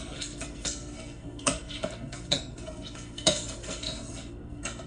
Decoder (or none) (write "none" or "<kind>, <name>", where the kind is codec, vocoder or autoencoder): codec, SNAC